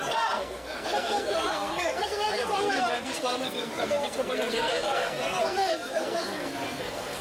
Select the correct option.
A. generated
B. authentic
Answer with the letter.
A